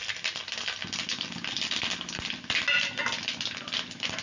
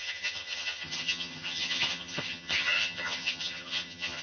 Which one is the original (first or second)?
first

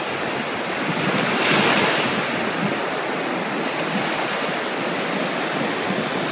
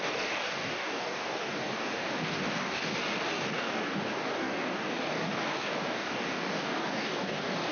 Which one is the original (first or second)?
first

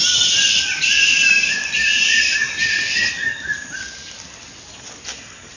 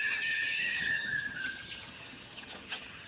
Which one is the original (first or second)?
first